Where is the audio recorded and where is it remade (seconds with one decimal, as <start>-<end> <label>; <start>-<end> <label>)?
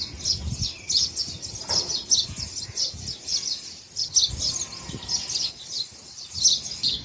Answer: 0.0-7.0 recorded